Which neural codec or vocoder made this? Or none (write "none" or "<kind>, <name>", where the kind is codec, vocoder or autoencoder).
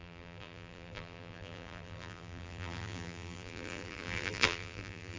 vocoder, BigVGAN v2